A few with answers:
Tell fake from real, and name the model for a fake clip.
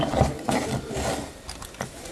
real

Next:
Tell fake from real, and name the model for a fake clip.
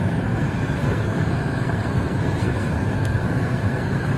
fake, codec, SNAC